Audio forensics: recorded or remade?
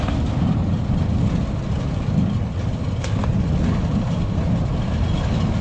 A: recorded